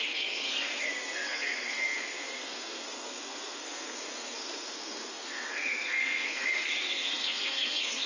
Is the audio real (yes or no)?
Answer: no